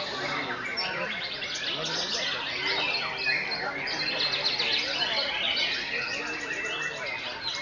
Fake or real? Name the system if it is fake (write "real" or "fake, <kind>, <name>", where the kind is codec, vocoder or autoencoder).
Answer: real